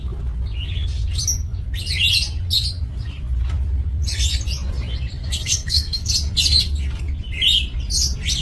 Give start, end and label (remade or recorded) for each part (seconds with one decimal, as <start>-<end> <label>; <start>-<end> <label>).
0.0-5.2 recorded; 5.2-6.1 remade; 6.1-8.4 recorded